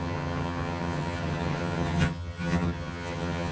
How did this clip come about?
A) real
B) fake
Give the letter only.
B